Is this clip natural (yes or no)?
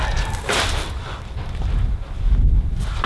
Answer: yes